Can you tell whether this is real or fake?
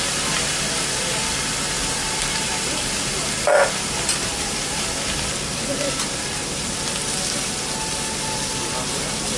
fake